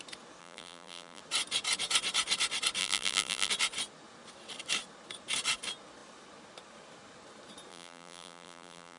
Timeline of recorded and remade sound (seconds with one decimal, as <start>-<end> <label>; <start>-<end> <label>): 0.0-0.4 recorded; 0.4-1.2 remade; 1.2-2.8 recorded; 2.8-3.5 remade; 3.5-7.7 recorded; 7.7-9.0 remade